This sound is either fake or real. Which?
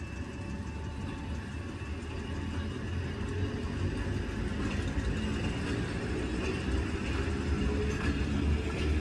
real